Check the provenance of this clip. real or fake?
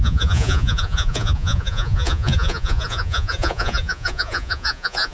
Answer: fake